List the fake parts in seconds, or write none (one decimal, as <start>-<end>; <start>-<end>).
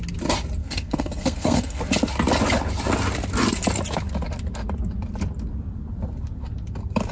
0.6-1.8